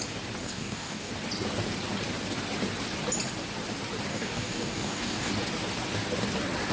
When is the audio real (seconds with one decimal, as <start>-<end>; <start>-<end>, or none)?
0.0-0.4; 1.1-4.1; 5.3-6.7